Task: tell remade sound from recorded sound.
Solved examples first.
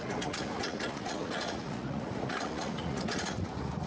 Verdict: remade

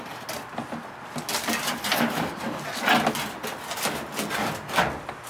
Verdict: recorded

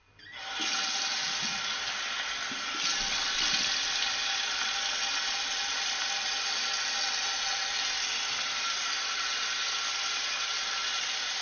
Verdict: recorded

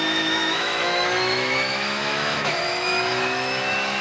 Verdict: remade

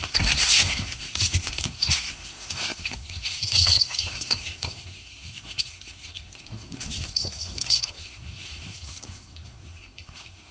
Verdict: remade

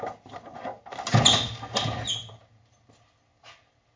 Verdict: recorded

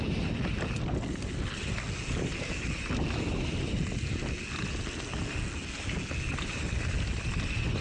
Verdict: recorded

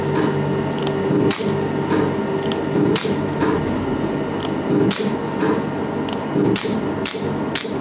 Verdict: recorded